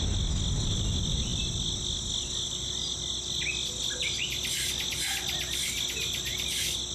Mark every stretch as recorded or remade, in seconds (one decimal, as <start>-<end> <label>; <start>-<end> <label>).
0.0-6.9 recorded